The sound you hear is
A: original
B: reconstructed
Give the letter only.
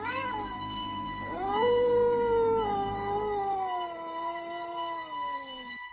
B